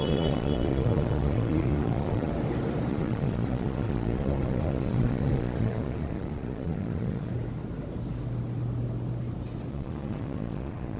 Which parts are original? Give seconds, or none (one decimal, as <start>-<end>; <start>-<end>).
2.3-2.9; 7.3-9.7